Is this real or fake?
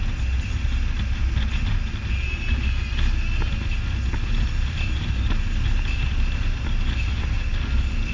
real